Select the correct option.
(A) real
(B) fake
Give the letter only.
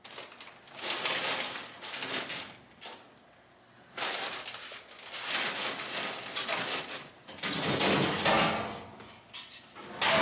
A